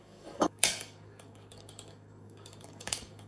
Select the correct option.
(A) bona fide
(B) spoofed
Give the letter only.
B